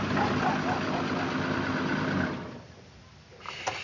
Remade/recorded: recorded